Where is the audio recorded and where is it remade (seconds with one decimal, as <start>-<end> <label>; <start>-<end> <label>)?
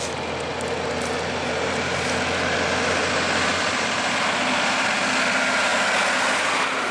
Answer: 0.0-6.9 recorded